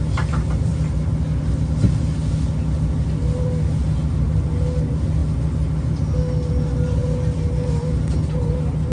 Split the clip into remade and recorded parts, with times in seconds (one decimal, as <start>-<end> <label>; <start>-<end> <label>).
0.0-8.9 recorded